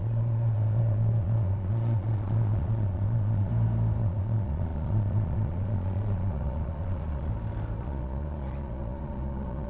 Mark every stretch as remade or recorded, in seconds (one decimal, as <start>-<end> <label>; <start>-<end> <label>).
0.0-3.5 remade; 3.5-4.0 recorded; 4.0-7.3 remade; 7.3-7.8 recorded; 7.8-9.7 remade